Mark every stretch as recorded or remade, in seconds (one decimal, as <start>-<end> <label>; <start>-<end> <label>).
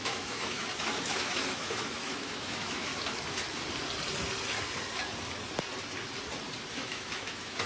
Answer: 0.0-2.9 remade; 2.9-6.7 recorded; 6.7-7.7 remade